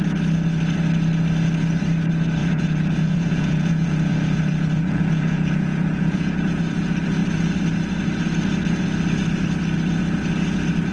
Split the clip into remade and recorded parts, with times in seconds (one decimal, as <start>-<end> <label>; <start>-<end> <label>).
0.0-2.4 recorded; 2.4-6.3 remade; 6.3-10.9 recorded